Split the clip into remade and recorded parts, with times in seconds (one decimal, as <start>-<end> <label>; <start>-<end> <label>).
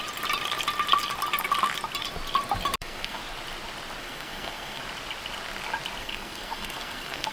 0.0-2.8 recorded; 2.8-3.2 remade; 3.2-4.0 recorded; 4.0-4.8 remade; 4.8-6.0 recorded; 6.0-7.3 remade